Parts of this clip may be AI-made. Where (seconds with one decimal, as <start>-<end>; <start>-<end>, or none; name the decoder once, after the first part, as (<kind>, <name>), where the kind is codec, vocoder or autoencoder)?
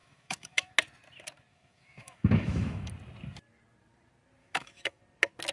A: 0.0-0.7 (autoencoder, DAC-VAE); 1.5-2.9; 4.4-5.0